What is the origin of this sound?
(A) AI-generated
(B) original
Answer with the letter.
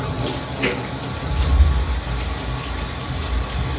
B